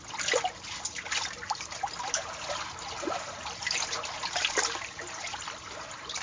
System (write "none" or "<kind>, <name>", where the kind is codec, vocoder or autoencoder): none